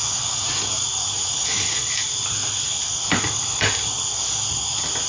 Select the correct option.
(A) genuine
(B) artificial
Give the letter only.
A